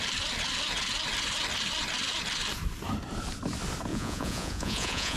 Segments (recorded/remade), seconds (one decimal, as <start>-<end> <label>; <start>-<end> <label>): 0.0-3.9 recorded; 3.9-5.2 remade